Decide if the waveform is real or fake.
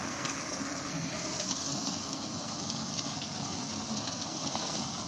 fake